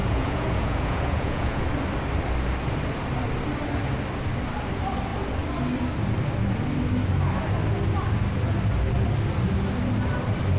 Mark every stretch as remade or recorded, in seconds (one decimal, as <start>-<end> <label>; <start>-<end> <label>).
0.0-1.6 remade; 1.6-10.6 recorded